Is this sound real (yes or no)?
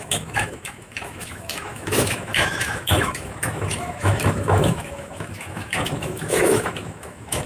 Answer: no